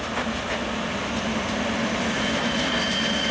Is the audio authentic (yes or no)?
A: yes